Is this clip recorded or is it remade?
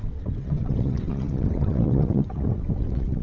remade